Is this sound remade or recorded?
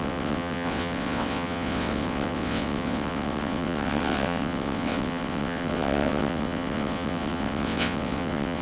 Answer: remade